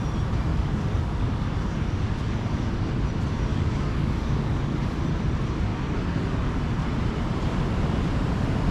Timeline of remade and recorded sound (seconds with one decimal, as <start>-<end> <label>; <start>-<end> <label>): 0.0-0.5 recorded; 0.5-3.0 remade; 3.0-3.5 recorded; 3.5-5.0 remade; 5.0-5.7 recorded; 5.7-6.6 remade; 6.6-8.7 recorded